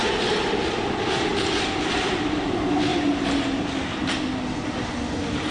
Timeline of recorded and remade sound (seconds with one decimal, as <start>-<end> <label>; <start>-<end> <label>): 0.0-2.9 recorded; 2.9-3.7 remade; 3.7-5.5 recorded